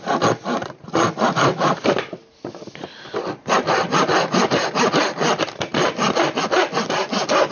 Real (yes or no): no